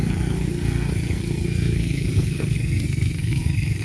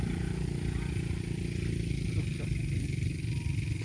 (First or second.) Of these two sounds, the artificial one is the first